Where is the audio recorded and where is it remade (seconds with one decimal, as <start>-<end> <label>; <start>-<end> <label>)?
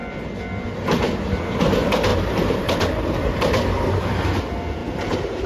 0.0-2.1 recorded; 2.1-3.9 remade; 3.9-4.8 recorded; 4.8-5.5 remade